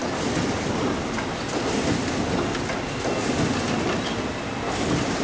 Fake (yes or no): no